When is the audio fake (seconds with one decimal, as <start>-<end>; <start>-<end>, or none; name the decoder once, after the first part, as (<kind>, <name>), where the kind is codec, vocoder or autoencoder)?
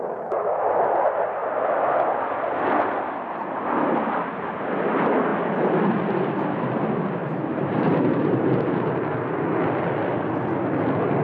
5.3-5.9 (vocoder, BigVGAN v2); 7.2-8.6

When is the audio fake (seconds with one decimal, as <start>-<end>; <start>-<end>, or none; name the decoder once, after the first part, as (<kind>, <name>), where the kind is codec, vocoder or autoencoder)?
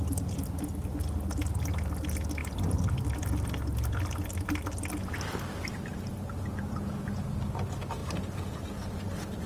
none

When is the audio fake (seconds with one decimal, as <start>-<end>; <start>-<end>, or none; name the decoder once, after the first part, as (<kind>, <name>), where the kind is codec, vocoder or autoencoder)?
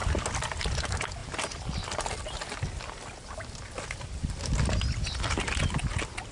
none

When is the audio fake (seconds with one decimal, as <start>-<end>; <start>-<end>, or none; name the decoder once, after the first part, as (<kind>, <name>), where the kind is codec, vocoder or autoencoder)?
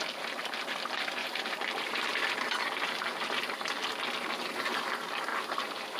1.2-2.2 (vocoder, BigVGAN v2); 5.3-6.0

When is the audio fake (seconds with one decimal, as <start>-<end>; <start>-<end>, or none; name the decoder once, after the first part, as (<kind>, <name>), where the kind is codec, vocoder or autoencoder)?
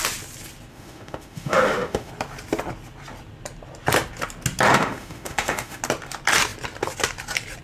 0.7-2.1 (autoencoder, DAC-VAE); 4.7-5.8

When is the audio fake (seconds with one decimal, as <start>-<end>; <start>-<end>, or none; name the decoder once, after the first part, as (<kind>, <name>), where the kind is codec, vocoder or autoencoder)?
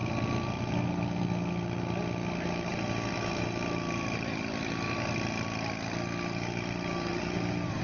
none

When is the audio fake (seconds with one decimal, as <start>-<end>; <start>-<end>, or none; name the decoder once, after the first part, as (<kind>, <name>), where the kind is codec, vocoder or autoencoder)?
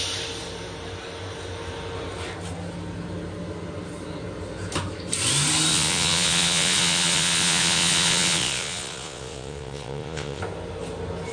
5.7-10.4 (vocoder, Vocos)